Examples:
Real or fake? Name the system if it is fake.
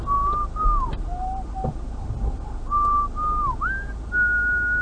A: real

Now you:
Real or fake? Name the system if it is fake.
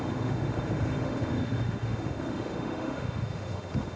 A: fake, autoencoder, DAC-VAE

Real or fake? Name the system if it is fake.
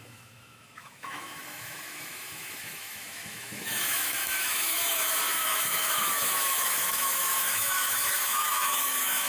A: fake, autoencoder, DAC-VAE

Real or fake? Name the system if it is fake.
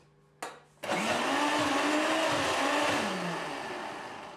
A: real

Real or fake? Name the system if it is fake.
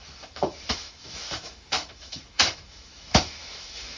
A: fake, autoencoder, DAC-VAE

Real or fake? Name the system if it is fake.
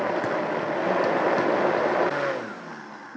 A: real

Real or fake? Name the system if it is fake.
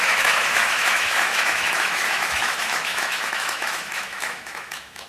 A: fake, autoencoder, DAC-VAE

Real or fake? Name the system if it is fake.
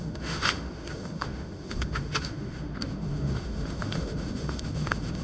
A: fake, autoencoder, DAC-VAE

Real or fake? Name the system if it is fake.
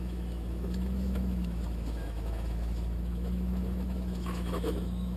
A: fake, autoencoder, DAC-VAE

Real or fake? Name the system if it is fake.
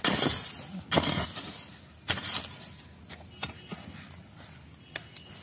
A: real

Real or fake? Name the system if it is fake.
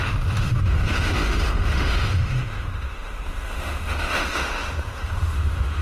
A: fake, autoencoder, DAC-VAE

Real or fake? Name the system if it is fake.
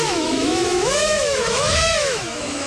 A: fake, autoencoder, DAC-VAE